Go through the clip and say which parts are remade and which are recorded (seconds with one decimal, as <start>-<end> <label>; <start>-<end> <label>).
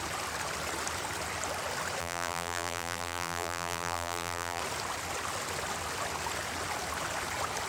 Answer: 0.0-2.0 recorded; 2.0-4.6 remade; 4.6-7.7 recorded